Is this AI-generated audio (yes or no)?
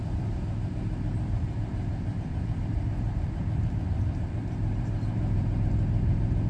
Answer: yes